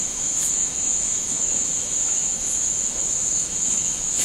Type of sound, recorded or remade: remade